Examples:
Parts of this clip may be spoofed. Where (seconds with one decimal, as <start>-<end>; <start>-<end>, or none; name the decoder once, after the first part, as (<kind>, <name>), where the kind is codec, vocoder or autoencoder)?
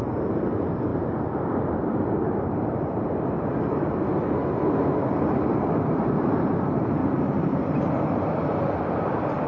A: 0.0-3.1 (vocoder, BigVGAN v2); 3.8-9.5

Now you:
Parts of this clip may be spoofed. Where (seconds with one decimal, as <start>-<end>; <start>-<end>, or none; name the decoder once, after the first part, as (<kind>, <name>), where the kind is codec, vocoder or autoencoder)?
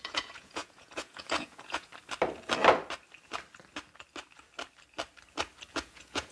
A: 0.0-1.9 (vocoder, Vocos); 5.7-6.3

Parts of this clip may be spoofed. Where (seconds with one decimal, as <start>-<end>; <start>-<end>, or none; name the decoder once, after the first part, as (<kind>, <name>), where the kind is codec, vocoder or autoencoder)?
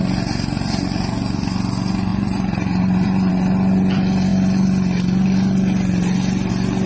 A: 2.1-3.3 (vocoder, BigVGAN v2)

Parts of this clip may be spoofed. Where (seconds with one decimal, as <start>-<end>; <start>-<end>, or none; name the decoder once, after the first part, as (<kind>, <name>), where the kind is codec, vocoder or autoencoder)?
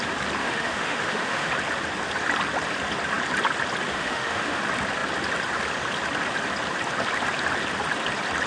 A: 0.4-1.5 (autoencoder, DAC-VAE); 3.9-4.6